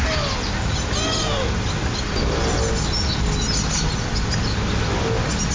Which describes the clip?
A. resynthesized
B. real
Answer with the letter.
B